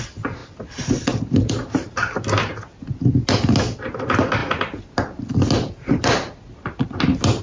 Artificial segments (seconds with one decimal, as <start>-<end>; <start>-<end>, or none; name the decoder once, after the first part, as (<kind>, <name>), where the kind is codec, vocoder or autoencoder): 0.4-1.5 (vocoder, BigVGAN v2)